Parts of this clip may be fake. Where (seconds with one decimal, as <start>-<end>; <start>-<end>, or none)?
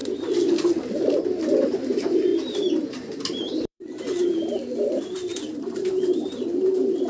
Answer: 1.6-2.3; 3.4-7.1